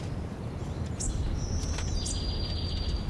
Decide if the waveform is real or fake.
real